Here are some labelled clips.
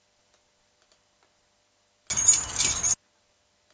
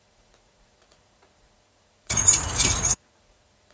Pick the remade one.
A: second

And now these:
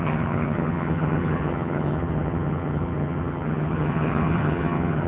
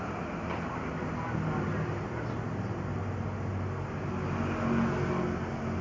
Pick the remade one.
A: first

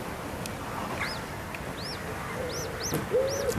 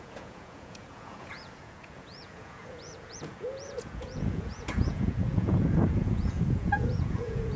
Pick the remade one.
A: second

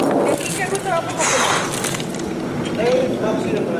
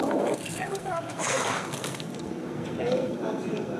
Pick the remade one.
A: second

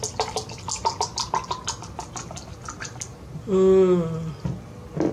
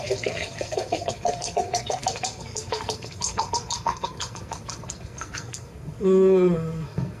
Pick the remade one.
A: second